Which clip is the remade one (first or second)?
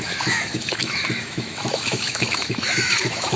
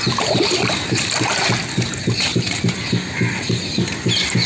first